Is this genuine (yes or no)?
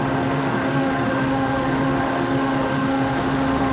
no